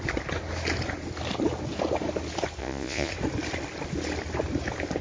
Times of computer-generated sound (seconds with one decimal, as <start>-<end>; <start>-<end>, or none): 2.6-3.1